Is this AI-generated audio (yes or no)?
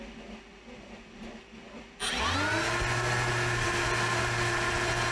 no